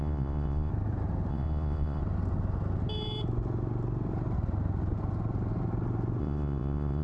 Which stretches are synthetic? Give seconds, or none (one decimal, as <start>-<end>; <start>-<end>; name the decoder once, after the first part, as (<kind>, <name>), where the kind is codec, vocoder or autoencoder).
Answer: 0.0-0.7 (vocoder, Vocos); 1.3-2.0; 6.2-7.0